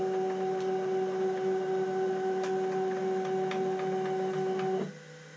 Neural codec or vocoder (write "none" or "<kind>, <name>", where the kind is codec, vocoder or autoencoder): none